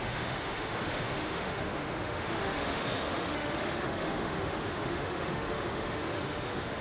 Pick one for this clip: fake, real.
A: fake